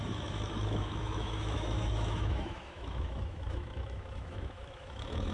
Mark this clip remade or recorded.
remade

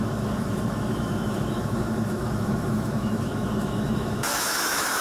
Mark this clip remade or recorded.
remade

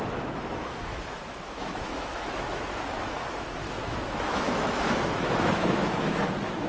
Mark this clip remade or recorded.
remade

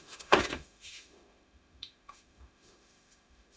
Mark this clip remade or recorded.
remade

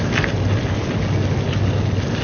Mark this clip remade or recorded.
recorded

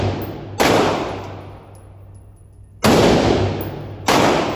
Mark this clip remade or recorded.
recorded